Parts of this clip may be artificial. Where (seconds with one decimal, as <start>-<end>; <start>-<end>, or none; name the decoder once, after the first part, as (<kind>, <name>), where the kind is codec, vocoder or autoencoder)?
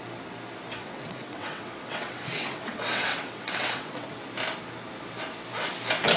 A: 0.8-4.2 (vocoder, WaveNeXt)